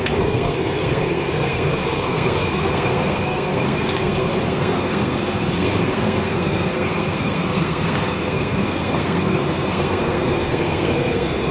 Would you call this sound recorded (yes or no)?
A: no